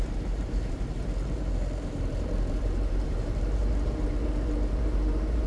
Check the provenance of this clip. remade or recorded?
remade